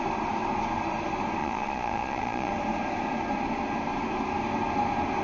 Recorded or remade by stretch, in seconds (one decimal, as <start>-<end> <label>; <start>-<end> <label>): 0.0-1.4 recorded; 1.4-2.5 remade; 2.5-5.2 recorded